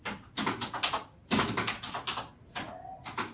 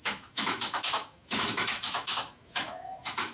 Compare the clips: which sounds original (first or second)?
first